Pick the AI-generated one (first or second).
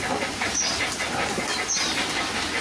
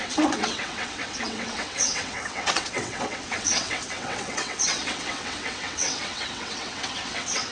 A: second